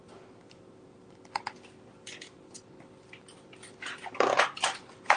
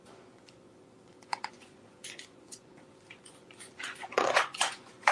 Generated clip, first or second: second